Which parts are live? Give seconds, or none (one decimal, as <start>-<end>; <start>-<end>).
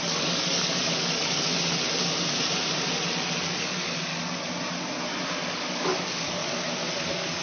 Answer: 1.5-3.6; 4.1-5.2; 6.4-6.9